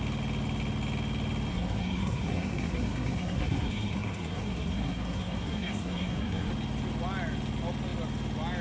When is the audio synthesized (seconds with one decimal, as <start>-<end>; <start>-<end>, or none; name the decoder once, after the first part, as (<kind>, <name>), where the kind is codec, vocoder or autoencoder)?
1.5-6.5 (codec, SNAC)